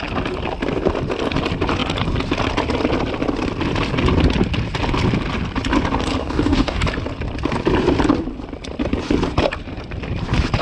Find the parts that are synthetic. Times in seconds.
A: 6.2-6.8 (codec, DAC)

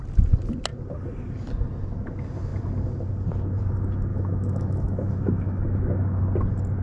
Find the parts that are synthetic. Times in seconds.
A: 4.1-6.2 (autoencoder, DAC-VAE)

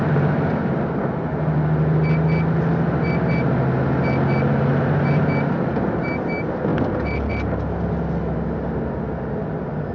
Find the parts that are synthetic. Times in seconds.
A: 4.7-5.2 (vocoder, BigVGAN v2)

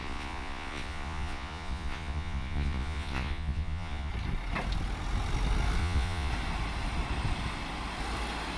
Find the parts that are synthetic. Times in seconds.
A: 0.0-4.1 (vocoder, Vocos); 5.8-6.3